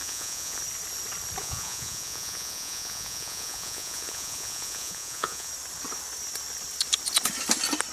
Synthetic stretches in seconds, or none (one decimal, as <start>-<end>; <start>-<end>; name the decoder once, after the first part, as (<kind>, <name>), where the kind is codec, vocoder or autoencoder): 0.0-0.6 (vocoder, Vocos); 1.4-5.5